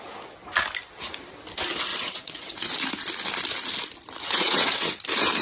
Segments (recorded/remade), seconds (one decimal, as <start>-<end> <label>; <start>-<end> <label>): 0.0-1.9 recorded; 1.9-2.7 remade; 2.7-4.2 recorded; 4.2-5.0 remade; 5.0-5.4 recorded